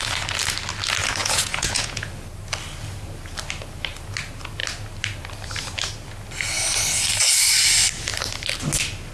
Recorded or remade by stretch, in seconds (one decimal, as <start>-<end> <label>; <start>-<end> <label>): 0.0-1.2 recorded; 1.2-2.1 remade; 2.1-9.1 recorded